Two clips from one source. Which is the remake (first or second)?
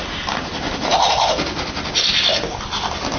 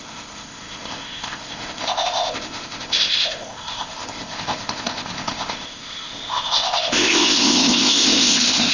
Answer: second